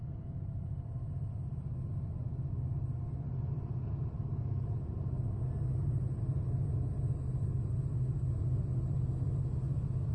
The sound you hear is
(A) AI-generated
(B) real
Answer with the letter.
B